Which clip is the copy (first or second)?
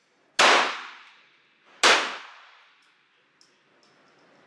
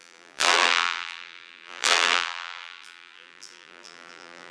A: second